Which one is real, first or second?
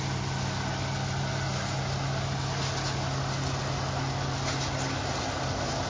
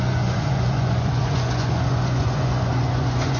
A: first